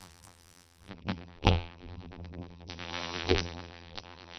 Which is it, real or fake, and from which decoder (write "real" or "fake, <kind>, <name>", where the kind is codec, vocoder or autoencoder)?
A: fake, vocoder, BigVGAN v2